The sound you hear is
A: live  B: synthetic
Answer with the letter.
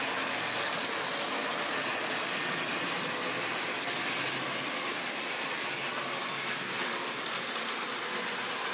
A